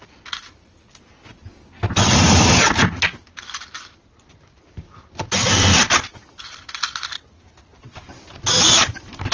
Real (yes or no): yes